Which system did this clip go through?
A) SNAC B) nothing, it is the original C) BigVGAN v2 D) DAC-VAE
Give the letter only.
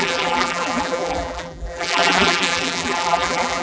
C